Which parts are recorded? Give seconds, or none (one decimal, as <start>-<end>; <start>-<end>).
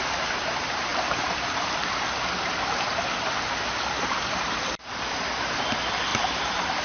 0.0-6.8